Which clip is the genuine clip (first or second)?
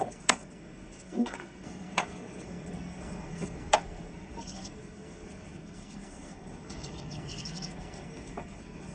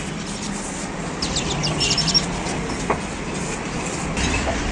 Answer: second